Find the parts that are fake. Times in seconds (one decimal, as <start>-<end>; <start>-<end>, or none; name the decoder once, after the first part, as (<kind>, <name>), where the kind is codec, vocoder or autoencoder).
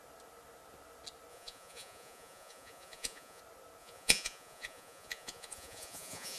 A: 1.3-3.4 (vocoder, Vocos); 3.8-6.4